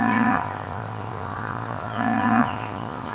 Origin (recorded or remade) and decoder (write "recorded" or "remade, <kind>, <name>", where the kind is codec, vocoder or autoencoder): remade, vocoder, Vocos